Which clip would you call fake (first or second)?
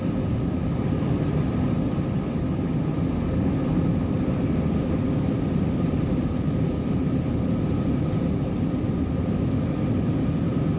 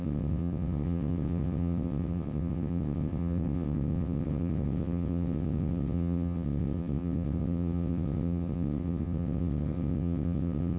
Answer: second